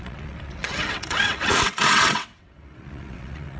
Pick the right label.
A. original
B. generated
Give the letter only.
B